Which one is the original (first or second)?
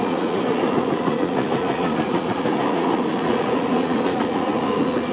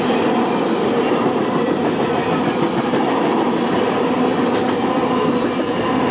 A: second